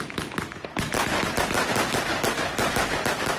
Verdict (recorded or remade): remade